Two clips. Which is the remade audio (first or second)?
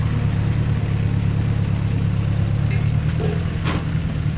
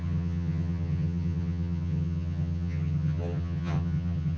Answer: second